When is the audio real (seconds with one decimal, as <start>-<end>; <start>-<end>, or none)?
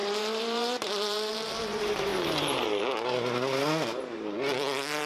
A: 3.6-4.6